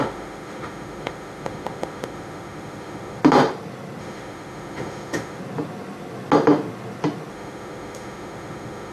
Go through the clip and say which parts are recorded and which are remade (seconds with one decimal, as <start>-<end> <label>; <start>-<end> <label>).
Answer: 0.0-3.2 remade; 3.2-4.0 recorded; 4.0-5.4 remade; 5.4-7.3 recorded; 7.3-8.9 remade